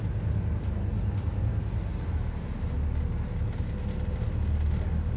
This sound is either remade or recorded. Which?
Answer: recorded